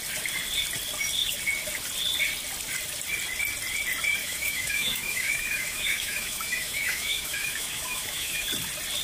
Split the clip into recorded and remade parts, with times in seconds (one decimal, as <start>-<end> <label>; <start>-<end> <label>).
0.0-4.2 recorded; 4.2-8.5 remade; 8.5-9.0 recorded